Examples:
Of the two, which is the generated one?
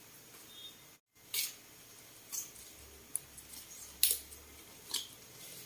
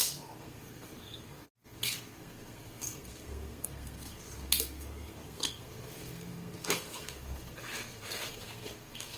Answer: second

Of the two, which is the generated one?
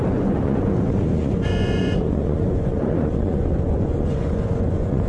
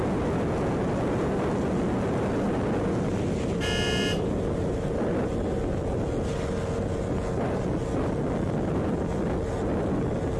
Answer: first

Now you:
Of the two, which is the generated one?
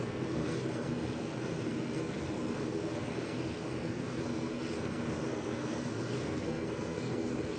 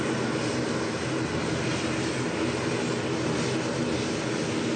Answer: first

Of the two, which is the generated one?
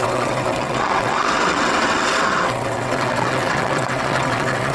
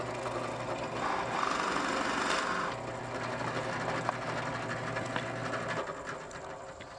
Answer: first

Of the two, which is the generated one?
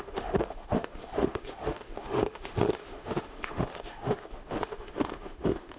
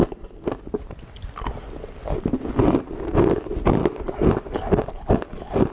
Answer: first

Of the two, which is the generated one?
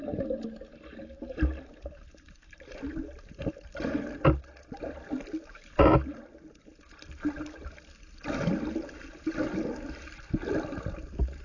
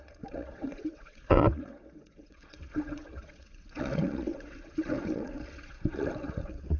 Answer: second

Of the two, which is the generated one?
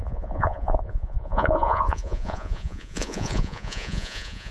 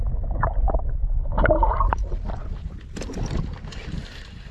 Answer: first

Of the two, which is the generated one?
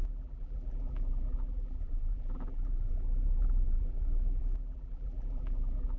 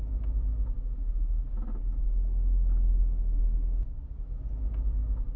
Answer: first